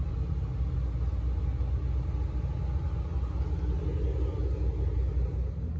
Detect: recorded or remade recorded